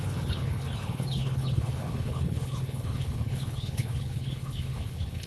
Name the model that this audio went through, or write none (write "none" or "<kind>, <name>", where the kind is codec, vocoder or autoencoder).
codec, HILCodec